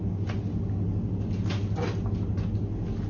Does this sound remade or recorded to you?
recorded